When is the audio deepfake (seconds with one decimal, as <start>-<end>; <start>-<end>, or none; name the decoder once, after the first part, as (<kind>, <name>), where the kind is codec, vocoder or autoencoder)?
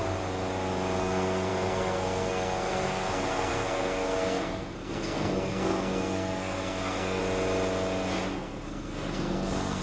1.0-7.2 (codec, SNAC); 8.3-9.8